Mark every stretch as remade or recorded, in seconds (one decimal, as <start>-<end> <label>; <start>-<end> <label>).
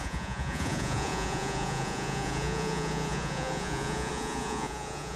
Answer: 0.0-5.2 remade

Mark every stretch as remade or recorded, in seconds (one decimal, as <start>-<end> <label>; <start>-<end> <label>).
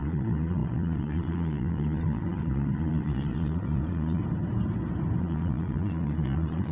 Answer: 0.0-4.2 remade; 4.2-5.2 recorded; 5.2-6.7 remade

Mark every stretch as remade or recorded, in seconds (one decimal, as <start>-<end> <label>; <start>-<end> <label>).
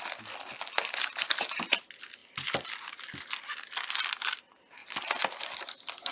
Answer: 0.0-6.1 recorded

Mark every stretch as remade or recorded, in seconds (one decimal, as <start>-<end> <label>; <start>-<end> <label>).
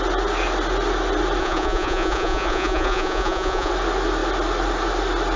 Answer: 0.0-1.4 recorded; 1.4-3.7 remade; 3.7-5.4 recorded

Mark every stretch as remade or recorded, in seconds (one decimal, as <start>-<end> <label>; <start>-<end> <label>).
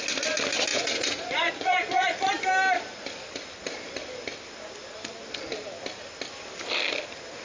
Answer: 0.0-0.7 recorded; 0.7-2.3 remade; 2.3-7.4 recorded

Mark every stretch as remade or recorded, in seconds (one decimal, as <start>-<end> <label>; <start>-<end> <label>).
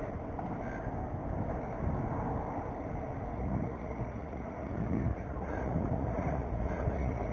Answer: 0.0-3.3 recorded; 3.3-7.3 remade